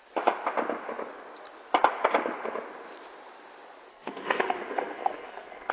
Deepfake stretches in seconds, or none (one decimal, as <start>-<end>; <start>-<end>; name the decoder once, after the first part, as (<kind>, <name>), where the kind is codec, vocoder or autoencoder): 3.9-5.7 (codec, SNAC)

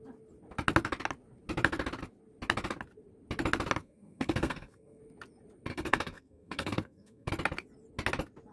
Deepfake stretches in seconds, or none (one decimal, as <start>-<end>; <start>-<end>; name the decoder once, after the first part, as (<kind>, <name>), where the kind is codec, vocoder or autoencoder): 3.8-5.0 (codec, SNAC); 5.7-7.3

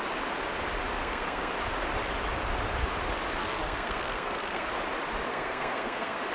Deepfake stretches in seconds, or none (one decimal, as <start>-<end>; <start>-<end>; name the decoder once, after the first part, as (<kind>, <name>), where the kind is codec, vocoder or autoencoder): 1.0-1.5 (codec, SNAC); 3.4-4.7; 5.3-6.3